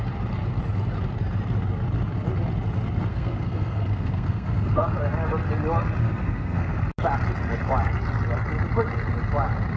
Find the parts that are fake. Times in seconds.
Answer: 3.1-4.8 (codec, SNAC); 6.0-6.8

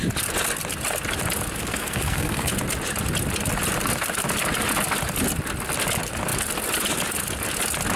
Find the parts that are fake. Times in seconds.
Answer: 1.6-2.5 (codec, SNAC)